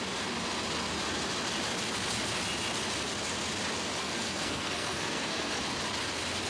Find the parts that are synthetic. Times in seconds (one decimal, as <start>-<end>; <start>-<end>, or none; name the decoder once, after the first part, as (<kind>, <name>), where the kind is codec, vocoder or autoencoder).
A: 4.0-5.5 (codec, SNAC)